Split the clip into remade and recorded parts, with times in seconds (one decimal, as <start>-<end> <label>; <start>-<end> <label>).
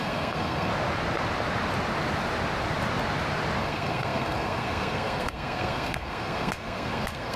0.0-0.7 remade; 0.7-3.6 recorded; 3.6-7.4 remade